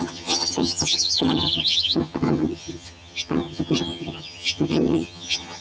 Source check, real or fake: fake